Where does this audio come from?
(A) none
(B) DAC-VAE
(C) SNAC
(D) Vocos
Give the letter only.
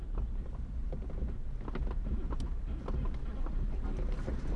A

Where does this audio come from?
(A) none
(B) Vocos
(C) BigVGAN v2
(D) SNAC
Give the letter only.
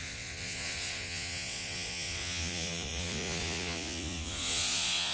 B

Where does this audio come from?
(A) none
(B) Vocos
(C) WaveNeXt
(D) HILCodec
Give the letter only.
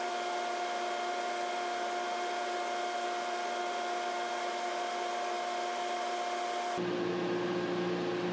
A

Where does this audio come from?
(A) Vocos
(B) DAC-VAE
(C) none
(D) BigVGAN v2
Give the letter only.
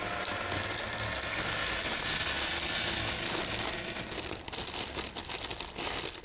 C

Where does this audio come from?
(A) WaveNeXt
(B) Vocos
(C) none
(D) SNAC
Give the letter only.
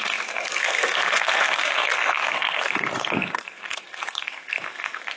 D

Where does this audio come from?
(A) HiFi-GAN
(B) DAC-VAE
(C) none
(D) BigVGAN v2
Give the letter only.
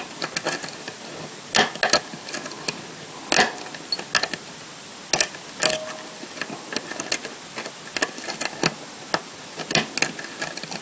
C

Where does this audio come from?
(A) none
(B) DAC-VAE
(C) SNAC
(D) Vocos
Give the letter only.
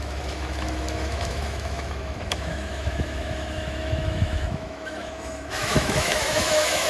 B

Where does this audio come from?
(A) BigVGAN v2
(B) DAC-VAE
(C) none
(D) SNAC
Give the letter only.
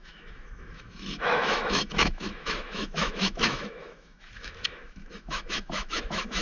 B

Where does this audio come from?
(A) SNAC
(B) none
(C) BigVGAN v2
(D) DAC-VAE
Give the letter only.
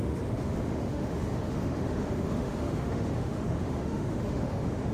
D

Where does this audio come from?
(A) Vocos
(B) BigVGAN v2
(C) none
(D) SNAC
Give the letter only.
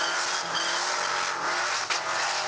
C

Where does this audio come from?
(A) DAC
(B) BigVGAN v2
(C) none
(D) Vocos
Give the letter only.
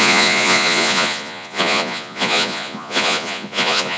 D